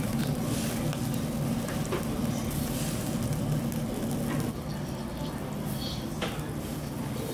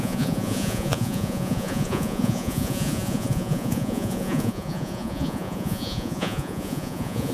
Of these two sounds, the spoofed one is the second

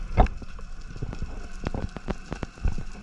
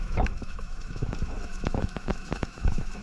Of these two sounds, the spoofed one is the second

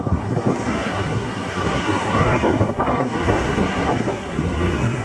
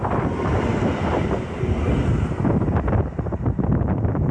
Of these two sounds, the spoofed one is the first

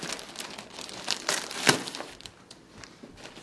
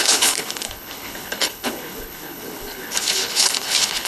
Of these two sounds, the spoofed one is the second